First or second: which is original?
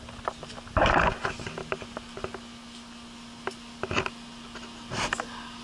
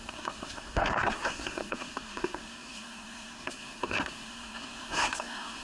first